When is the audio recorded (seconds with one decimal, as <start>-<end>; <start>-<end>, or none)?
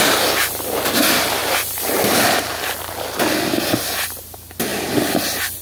0.0-4.7